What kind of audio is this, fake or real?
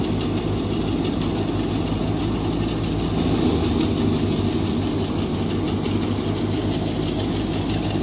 real